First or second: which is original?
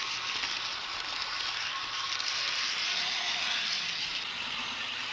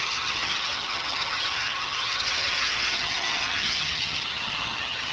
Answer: first